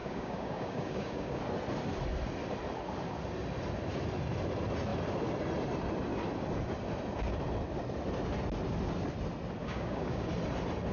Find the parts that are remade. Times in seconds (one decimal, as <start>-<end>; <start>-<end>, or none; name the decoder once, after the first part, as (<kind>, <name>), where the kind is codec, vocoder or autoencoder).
0.0-1.4 (codec, DAC); 9.6-10.3